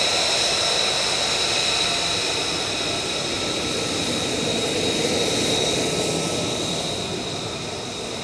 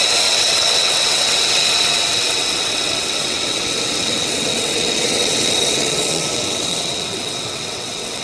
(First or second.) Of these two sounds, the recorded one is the first